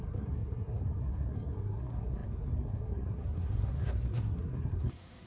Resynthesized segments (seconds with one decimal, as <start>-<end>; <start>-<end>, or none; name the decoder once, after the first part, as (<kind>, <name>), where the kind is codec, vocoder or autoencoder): 0.0-5.3 (codec, SNAC)